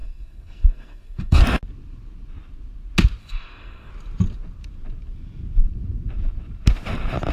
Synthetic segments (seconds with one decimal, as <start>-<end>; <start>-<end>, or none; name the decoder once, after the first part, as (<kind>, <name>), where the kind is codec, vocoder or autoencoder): 0.0-1.4 (codec, SNAC); 3.2-3.9